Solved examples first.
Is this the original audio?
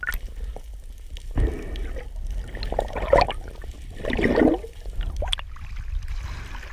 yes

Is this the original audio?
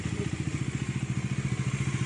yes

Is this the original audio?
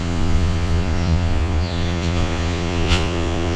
no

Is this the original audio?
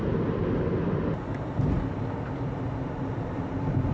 yes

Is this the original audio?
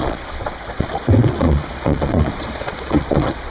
no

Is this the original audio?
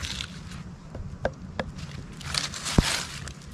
yes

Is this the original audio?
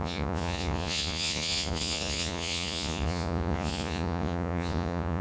no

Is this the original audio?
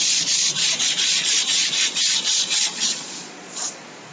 no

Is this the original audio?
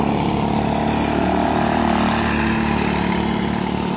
yes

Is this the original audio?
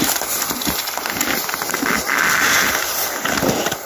yes